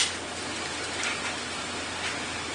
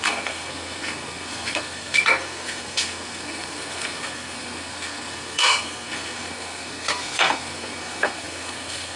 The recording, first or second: first